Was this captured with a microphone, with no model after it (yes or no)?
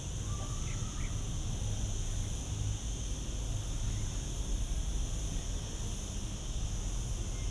yes